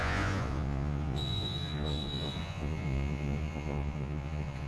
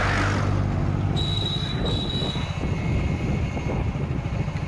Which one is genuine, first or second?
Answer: second